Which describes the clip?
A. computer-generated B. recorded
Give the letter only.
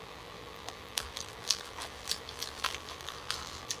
A